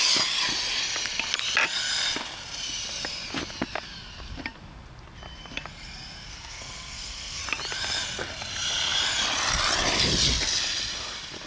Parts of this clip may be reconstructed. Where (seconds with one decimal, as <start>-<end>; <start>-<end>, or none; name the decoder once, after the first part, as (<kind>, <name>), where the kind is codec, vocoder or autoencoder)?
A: 6.3-7.4 (codec, SNAC)